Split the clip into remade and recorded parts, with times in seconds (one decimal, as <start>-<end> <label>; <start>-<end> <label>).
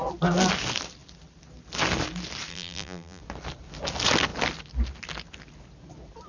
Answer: 0.0-2.5 recorded; 2.5-3.2 remade; 3.2-6.3 recorded